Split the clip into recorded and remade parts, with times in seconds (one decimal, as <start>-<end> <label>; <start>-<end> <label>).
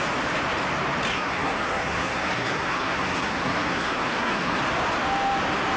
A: 0.0-1.1 recorded; 1.1-4.6 remade; 4.6-5.8 recorded